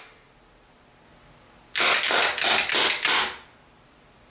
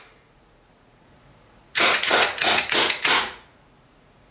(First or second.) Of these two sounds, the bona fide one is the first